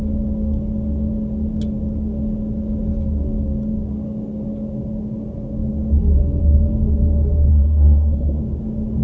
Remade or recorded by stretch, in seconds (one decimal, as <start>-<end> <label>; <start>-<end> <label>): 0.0-7.5 recorded; 7.5-8.4 remade; 8.4-9.0 recorded